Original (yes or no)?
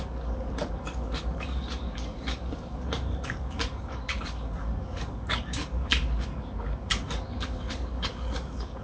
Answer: no